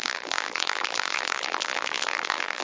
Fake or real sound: fake